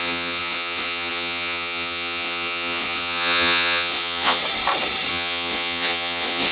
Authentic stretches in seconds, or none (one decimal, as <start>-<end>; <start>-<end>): 4.4-5.1